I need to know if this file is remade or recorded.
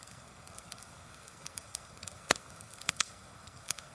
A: remade